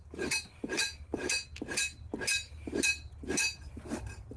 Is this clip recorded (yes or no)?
yes